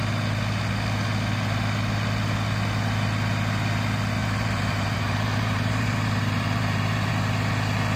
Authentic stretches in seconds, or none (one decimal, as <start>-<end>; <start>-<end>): 0.0-4.2; 7.1-8.0